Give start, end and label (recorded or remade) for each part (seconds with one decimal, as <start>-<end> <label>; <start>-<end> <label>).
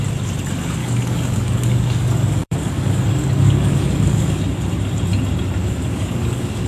0.0-0.8 recorded; 0.8-4.4 remade; 4.4-5.6 recorded; 5.6-6.7 remade